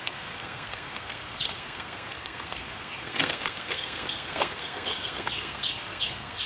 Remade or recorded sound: remade